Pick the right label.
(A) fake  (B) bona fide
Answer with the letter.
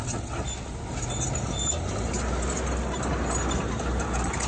B